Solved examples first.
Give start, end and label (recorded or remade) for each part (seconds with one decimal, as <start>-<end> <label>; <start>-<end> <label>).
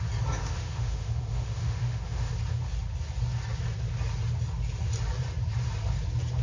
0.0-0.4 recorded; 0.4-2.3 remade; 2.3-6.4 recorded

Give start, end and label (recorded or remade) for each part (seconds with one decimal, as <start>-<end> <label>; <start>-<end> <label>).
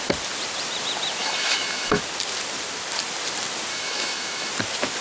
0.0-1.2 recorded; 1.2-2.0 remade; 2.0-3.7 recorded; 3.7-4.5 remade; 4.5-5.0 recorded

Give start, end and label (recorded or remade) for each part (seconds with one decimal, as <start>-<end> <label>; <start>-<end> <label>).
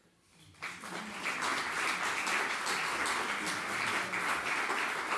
0.0-5.2 recorded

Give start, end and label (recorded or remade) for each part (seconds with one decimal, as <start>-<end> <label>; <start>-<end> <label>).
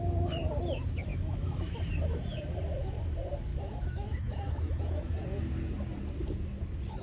0.0-1.1 recorded; 1.1-1.8 remade; 1.8-3.5 recorded; 3.5-5.1 remade; 5.1-7.0 recorded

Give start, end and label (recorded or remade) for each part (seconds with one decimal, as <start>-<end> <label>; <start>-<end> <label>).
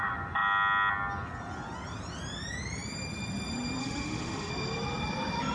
0.0-3.8 recorded; 3.8-4.5 remade; 4.5-5.5 recorded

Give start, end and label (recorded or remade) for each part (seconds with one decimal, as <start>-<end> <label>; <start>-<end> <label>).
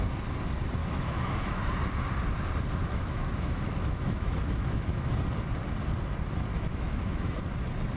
0.0-0.8 recorded; 0.8-1.7 remade; 1.7-2.8 recorded; 2.8-5.2 remade; 5.2-6.5 recorded; 6.5-7.4 remade; 7.4-8.0 recorded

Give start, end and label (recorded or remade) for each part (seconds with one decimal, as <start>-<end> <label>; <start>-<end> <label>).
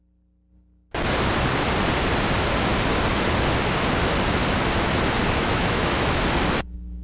0.0-5.2 recorded; 5.2-6.2 remade; 6.2-7.0 recorded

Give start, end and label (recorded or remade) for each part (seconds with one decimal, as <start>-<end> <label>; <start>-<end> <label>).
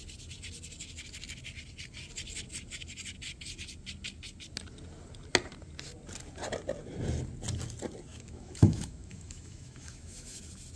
0.0-8.1 recorded; 8.1-10.4 remade; 10.4-10.8 recorded